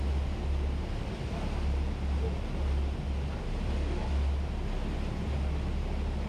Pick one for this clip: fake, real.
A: real